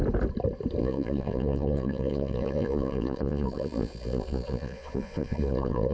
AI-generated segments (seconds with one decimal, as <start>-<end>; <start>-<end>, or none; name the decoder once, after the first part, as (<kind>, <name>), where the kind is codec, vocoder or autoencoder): 0.8-5.9 (vocoder, Vocos)